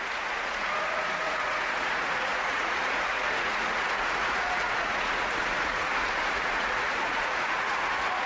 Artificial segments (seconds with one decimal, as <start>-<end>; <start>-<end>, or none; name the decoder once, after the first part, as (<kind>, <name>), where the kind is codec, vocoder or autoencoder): 0.0-8.3 (vocoder, Vocos)